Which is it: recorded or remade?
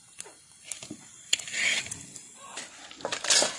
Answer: recorded